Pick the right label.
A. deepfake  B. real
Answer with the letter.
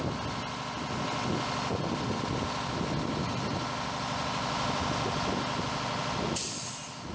B